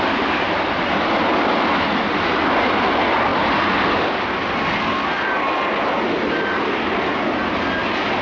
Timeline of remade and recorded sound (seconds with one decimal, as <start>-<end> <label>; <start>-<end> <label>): 0.0-8.2 recorded